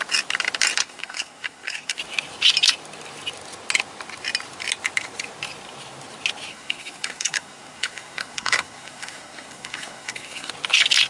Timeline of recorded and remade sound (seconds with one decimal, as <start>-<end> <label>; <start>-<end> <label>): 0.0-0.8 recorded; 0.8-2.0 remade; 2.0-6.5 recorded; 6.5-10.5 remade; 10.5-11.1 recorded